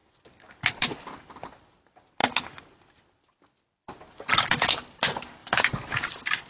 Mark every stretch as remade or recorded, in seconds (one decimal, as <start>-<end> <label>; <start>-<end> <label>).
0.0-6.5 recorded